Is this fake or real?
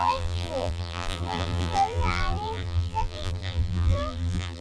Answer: fake